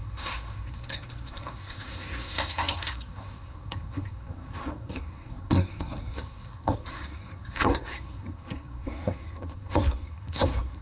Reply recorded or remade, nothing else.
remade